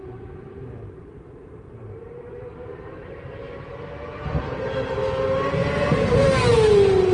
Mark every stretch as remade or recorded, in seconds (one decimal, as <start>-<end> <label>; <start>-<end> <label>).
0.0-7.1 remade